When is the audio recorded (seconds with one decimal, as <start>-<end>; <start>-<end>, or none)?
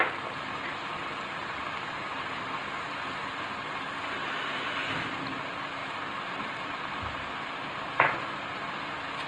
0.0-9.3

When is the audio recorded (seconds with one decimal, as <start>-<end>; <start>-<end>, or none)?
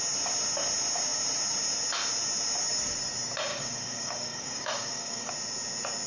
0.0-3.5; 5.3-6.1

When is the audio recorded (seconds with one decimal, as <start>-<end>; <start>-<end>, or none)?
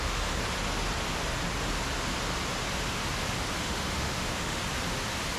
0.4-3.6; 4.6-5.4